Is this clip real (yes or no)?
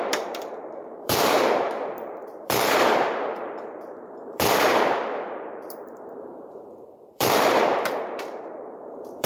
no